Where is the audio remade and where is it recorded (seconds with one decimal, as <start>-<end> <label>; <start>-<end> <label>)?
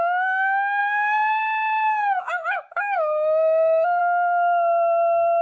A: 0.0-0.8 recorded; 0.8-4.0 remade; 4.0-5.4 recorded